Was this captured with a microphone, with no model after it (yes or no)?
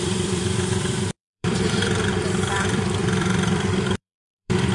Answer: no